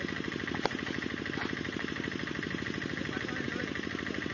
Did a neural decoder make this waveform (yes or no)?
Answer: no